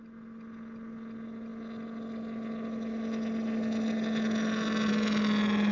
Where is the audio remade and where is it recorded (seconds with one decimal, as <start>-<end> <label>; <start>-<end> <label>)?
0.0-5.7 recorded